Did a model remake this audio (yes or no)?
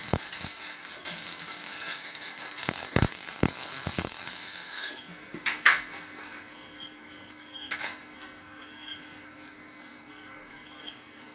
yes